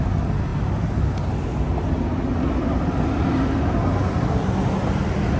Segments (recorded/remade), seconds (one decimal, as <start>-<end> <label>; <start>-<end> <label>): 0.0-5.4 recorded